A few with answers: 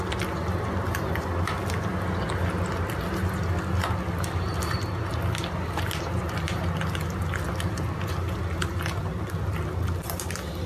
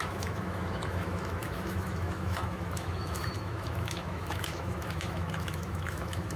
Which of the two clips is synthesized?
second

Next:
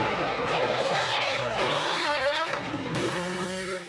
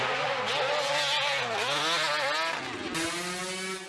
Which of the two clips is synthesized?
first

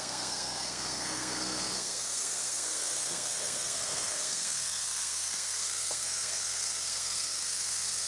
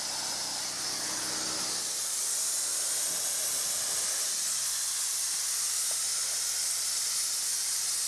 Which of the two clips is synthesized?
first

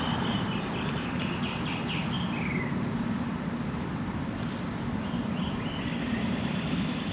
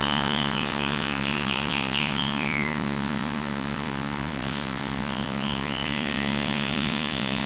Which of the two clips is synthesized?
second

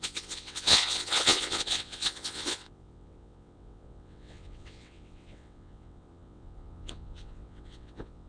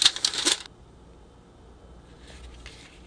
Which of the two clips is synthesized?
first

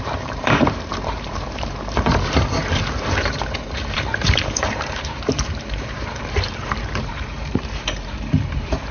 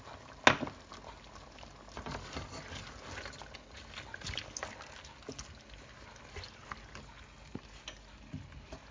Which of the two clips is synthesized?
first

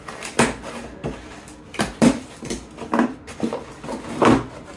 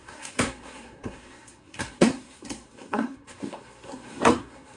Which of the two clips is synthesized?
second